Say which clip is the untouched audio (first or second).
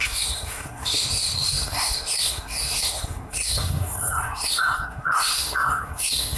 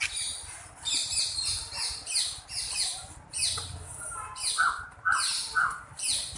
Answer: second